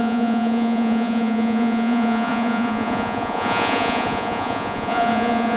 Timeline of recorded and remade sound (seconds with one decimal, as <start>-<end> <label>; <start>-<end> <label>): 0.0-5.6 remade